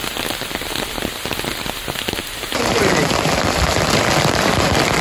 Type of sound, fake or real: real